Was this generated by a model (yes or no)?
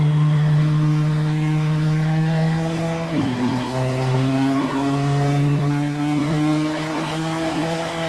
yes